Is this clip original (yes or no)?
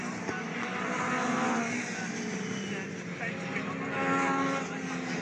yes